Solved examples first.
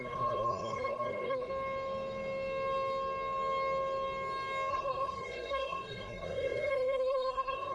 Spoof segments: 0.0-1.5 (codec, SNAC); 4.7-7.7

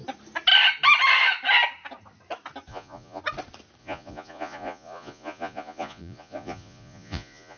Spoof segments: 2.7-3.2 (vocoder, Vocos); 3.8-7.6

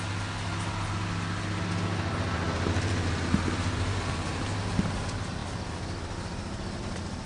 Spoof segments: none